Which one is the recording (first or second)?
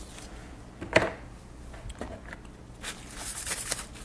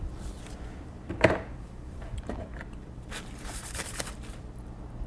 first